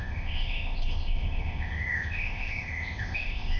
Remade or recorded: remade